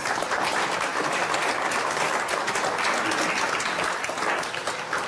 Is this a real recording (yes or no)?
yes